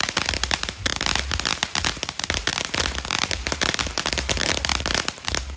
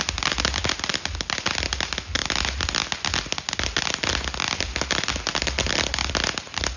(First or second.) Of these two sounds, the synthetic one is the first